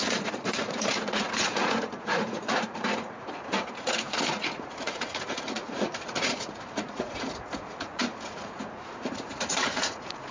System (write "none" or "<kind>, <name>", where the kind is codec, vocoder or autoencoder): vocoder, Vocos